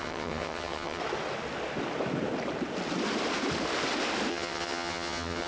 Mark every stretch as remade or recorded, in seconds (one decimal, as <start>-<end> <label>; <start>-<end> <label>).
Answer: 0.0-1.0 remade; 1.0-4.3 recorded; 4.3-5.5 remade